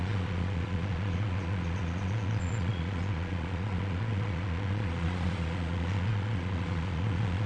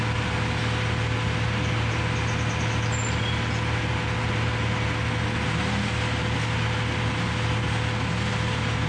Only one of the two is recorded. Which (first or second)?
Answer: second